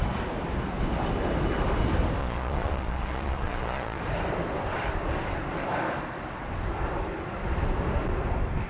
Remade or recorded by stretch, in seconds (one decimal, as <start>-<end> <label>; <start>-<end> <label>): 0.0-2.2 recorded; 2.2-4.0 remade; 4.0-8.7 recorded